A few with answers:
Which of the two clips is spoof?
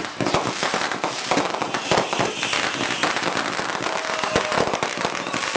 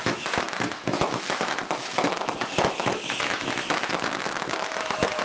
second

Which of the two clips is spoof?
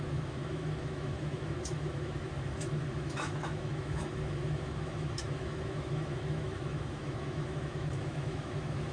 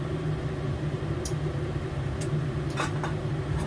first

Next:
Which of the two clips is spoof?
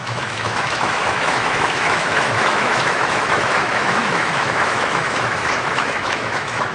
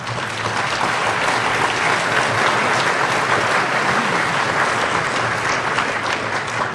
first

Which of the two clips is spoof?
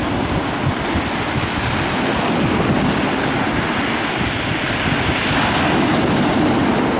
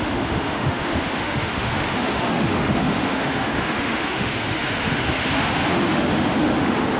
second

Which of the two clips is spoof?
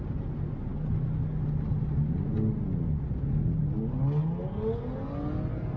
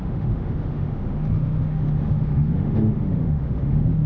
second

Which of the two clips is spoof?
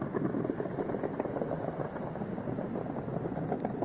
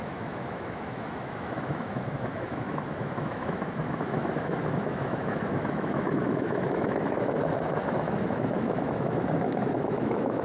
second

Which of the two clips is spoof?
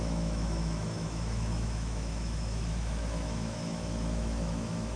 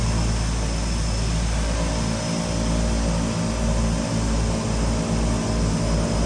first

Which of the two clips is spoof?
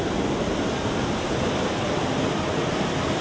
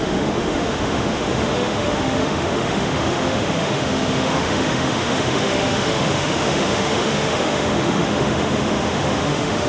second